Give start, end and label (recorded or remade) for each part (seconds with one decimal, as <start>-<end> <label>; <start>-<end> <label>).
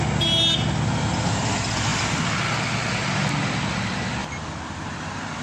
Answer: 0.0-5.4 recorded